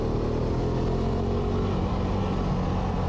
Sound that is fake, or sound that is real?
real